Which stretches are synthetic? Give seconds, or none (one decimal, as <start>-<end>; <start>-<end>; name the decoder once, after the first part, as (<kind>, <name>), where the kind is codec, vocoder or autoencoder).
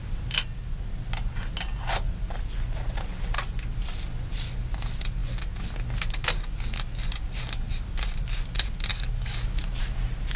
8.9-9.6 (codec, DAC)